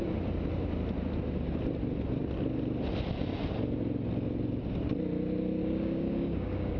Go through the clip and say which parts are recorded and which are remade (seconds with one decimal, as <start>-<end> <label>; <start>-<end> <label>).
0.0-5.6 recorded; 5.6-6.8 remade